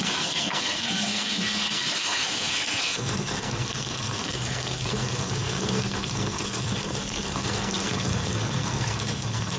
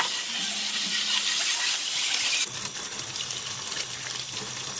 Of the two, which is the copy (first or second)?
first